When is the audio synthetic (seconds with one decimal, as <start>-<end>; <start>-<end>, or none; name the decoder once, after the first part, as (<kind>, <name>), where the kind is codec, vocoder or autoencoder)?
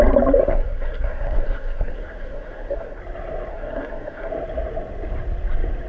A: 0.4-3.0 (codec, SNAC); 3.5-4.3